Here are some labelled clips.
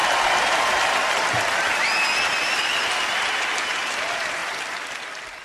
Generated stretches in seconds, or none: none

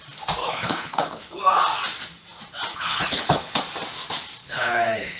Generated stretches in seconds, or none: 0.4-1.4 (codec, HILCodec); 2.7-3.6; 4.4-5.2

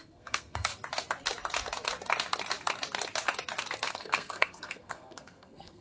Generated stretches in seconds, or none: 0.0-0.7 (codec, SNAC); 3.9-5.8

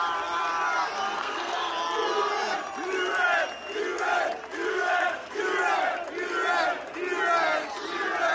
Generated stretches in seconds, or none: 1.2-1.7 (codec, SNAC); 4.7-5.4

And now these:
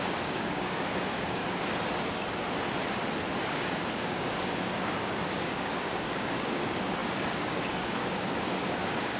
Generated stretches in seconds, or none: 0.0-1.4 (codec, DAC); 3.4-9.2

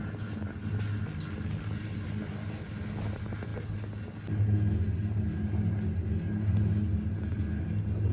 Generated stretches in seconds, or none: none

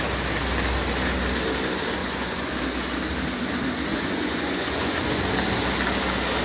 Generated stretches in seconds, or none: 2.0-2.5 (vocoder, Vocos); 3.9-5.2

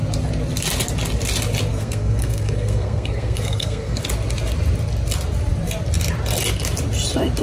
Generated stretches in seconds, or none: 1.7-4.0 (codec, SNAC)